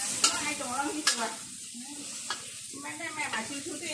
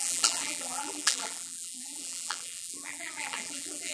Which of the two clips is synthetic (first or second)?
second